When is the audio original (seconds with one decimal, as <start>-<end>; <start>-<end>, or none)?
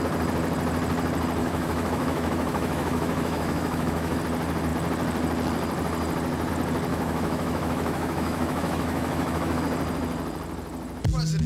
0.0-1.4; 4.2-6.9; 9.6-11.5